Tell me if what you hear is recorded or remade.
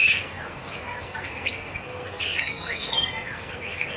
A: remade